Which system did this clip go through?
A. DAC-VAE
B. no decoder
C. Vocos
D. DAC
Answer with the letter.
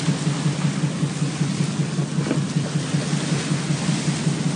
B